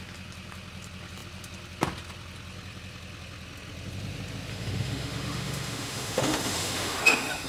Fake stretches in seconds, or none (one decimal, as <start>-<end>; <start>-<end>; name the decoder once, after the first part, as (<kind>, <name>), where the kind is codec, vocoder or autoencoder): 4.5-7.5 (autoencoder, DAC-VAE)

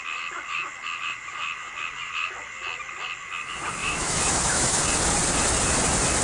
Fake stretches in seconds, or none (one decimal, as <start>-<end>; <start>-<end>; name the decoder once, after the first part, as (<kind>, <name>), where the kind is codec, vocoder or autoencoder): 3.8-4.8 (autoencoder, DAC-VAE)

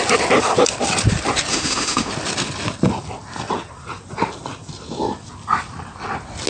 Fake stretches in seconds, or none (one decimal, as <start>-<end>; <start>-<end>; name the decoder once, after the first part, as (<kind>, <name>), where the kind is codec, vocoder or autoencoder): 1.5-2.1 (autoencoder, DAC-VAE)

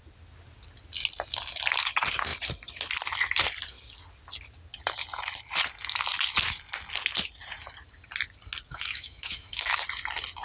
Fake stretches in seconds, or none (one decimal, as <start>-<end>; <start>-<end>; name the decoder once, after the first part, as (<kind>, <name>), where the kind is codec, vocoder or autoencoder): 8.7-9.8 (autoencoder, DAC-VAE)

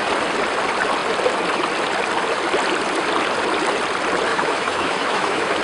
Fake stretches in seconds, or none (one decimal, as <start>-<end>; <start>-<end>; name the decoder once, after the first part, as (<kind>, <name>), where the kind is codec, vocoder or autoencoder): 4.3-5.6 (autoencoder, DAC-VAE)

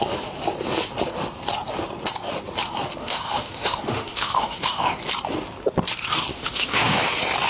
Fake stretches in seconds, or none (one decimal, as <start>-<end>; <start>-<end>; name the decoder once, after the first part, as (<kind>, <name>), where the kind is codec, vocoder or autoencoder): 3.0-5.0 (autoencoder, DAC-VAE); 6.3-7.0

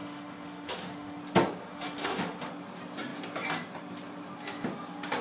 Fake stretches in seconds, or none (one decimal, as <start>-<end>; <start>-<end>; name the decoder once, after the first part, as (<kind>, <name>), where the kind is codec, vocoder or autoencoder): 0.0-1.2 (autoencoder, DAC-VAE); 1.6-2.5

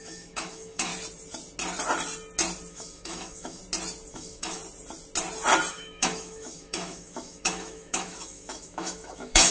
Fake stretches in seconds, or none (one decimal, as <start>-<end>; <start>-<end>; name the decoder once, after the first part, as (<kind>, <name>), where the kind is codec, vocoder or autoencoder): 0.0-0.9 (autoencoder, DAC-VAE); 2.7-3.6; 4.1-4.6; 5.7-9.5